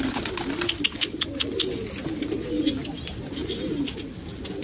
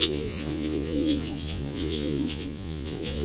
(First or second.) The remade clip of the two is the second